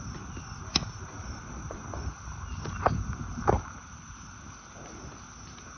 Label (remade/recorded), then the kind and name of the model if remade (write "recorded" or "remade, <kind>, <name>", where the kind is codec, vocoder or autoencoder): recorded